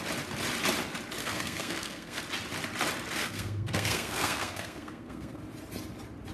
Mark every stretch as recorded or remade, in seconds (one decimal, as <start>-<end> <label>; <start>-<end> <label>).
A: 0.0-1.2 recorded; 1.2-2.2 remade; 2.2-3.2 recorded; 3.2-5.4 remade; 5.4-6.3 recorded